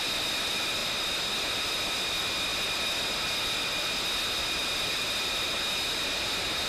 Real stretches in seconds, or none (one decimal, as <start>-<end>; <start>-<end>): 0.0-6.7